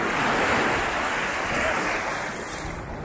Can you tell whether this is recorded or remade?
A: recorded